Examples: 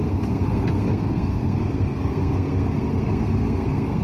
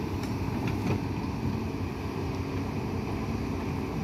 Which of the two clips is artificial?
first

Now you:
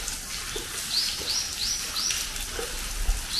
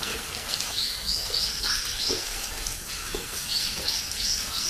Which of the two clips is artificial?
second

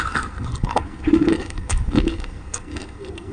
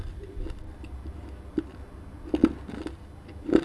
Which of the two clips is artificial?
first